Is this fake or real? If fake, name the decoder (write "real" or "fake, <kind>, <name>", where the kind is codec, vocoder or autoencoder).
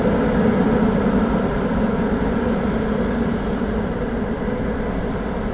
real